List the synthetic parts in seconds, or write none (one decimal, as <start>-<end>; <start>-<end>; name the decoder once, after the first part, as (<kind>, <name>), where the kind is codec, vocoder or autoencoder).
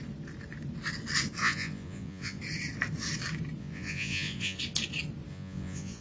1.4-2.4 (vocoder, Vocos); 3.6-4.6; 5.3-6.0